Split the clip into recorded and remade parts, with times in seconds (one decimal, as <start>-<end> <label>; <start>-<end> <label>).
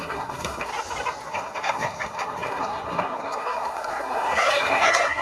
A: 0.0-0.7 remade; 0.7-1.3 recorded; 1.3-5.2 remade